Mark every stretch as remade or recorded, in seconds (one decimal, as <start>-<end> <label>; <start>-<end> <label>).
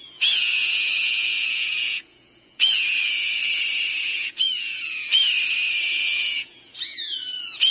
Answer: 0.0-3.4 remade; 3.4-4.1 recorded; 4.1-5.2 remade; 5.2-5.9 recorded; 5.9-7.7 remade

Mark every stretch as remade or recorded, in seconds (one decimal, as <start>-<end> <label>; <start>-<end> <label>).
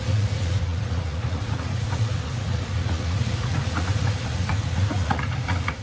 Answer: 0.0-5.8 remade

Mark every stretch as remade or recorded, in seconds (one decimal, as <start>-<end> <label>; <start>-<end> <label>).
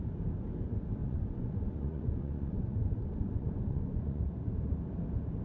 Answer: 0.0-1.0 recorded; 1.0-4.2 remade; 4.2-5.4 recorded